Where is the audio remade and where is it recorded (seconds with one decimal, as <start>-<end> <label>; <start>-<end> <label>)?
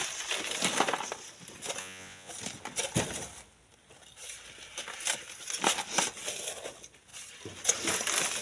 0.0-1.8 recorded; 1.8-2.3 remade; 2.3-8.4 recorded